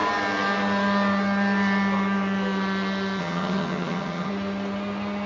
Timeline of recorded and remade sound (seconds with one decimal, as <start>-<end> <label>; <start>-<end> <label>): 0.0-3.2 recorded; 3.2-4.3 remade; 4.3-5.3 recorded